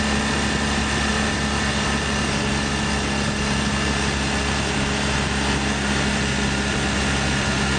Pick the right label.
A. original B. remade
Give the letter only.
A